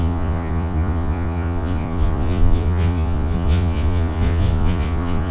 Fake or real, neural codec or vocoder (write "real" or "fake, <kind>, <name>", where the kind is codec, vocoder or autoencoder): fake, vocoder, Vocos